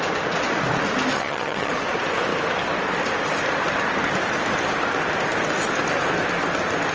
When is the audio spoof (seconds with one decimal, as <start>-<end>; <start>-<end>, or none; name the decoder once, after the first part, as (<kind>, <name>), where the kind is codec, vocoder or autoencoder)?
1.1-1.7 (vocoder, HiFi-GAN)